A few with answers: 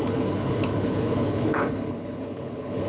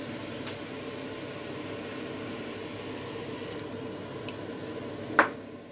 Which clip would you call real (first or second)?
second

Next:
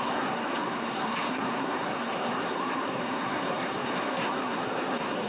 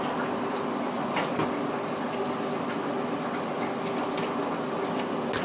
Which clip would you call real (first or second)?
second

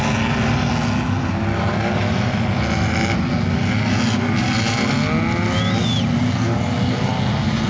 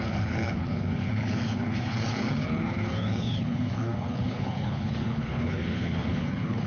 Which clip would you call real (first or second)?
first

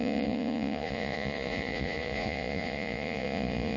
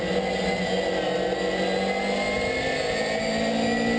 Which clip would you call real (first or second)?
second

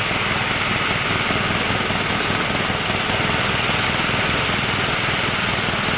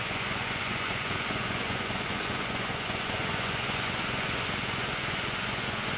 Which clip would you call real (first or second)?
first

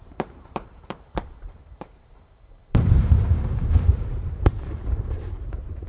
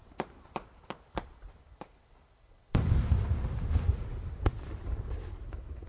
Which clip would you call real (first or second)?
second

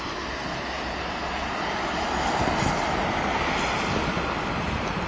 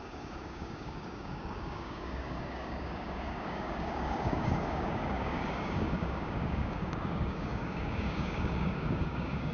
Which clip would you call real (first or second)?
first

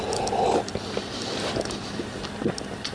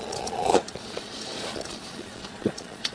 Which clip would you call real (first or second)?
first